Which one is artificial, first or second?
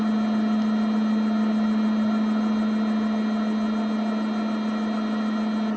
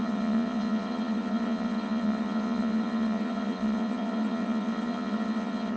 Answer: second